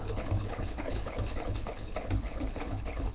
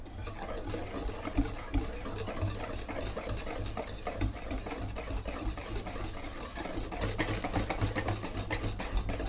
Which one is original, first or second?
second